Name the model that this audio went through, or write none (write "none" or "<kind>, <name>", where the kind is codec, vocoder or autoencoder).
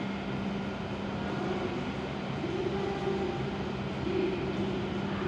none